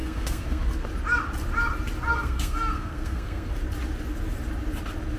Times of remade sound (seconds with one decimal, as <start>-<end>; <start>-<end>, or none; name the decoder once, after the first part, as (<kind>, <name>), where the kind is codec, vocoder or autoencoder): 0.0-0.6 (codec, SNAC); 2.1-3.5